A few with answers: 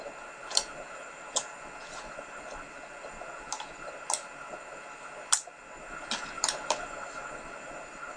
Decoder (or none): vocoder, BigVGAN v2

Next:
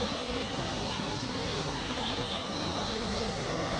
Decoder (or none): codec, SNAC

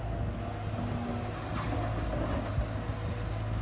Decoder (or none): none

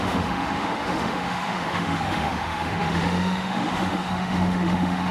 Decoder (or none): autoencoder, DAC-VAE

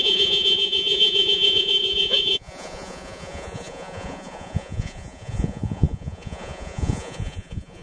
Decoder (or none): vocoder, Vocos